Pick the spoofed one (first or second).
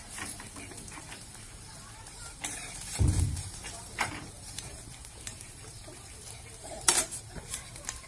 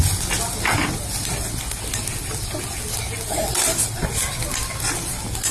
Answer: first